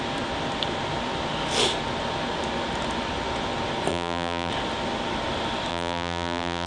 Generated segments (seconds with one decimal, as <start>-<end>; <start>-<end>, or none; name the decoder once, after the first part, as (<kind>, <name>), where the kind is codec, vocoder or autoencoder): 3.9-4.5 (vocoder, BigVGAN v2); 5.7-6.7